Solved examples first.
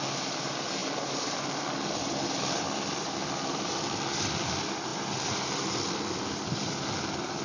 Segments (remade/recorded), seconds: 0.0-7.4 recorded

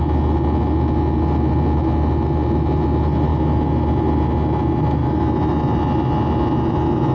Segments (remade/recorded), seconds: 0.0-7.1 recorded

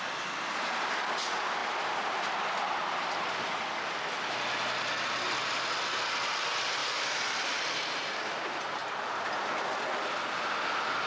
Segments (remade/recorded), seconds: 0.0-11.1 recorded

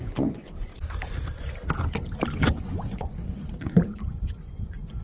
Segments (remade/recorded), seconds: 0.0-0.7 remade; 0.7-2.4 recorded; 2.4-5.0 remade